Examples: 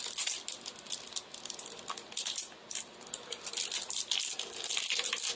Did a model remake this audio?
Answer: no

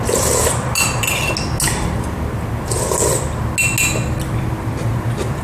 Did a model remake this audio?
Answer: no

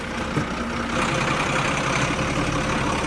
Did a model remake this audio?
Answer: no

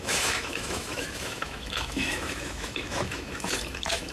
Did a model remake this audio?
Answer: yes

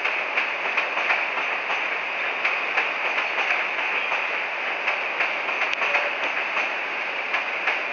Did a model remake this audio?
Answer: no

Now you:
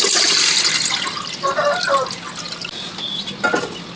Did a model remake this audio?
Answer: no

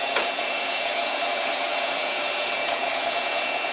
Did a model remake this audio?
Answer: yes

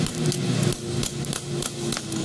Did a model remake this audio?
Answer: no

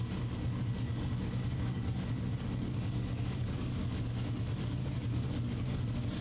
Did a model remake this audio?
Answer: yes